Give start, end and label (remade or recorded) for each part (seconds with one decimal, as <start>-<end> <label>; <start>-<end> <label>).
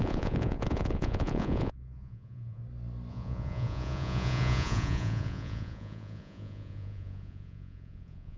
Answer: 0.0-2.6 remade; 2.6-3.1 recorded; 3.1-8.4 remade